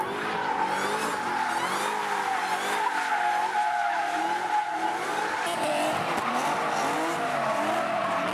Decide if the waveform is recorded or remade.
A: recorded